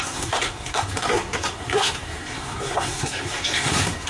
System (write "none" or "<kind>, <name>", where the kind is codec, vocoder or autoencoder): codec, SNAC